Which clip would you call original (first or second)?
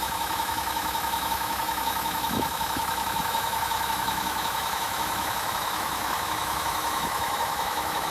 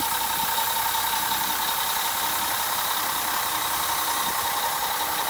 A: second